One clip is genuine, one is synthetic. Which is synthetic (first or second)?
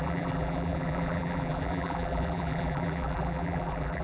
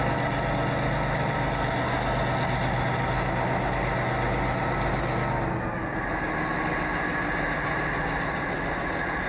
first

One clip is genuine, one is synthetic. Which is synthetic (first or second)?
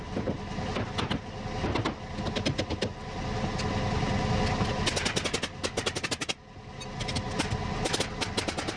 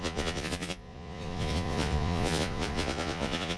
second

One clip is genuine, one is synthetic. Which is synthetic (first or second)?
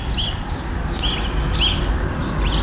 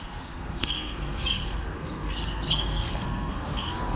second